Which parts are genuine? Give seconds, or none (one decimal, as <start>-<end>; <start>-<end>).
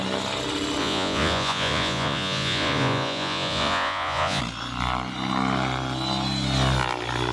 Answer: 0.0-0.8; 4.4-7.3